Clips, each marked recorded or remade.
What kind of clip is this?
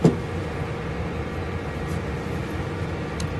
recorded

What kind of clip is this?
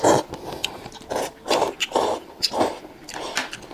recorded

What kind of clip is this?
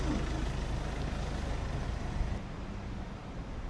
recorded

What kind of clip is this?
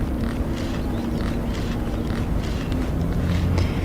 recorded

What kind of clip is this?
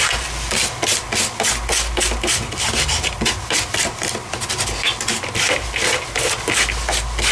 recorded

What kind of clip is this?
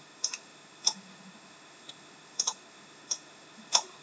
remade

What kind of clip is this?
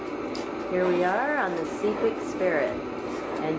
recorded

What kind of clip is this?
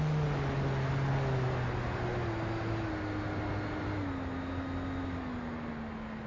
recorded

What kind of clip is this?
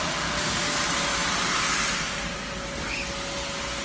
recorded